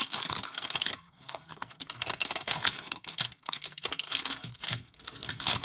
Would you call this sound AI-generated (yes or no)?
yes